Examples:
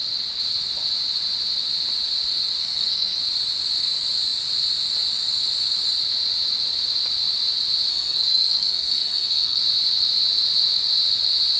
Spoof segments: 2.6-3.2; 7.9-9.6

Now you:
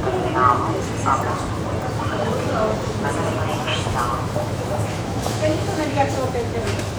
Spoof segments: 3.7-7.0